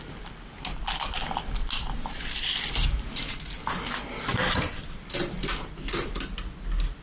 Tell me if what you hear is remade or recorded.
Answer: recorded